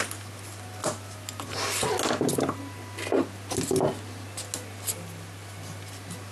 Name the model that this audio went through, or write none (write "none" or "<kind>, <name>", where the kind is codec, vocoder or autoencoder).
none